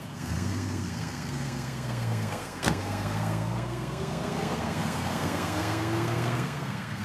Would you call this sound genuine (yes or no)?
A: no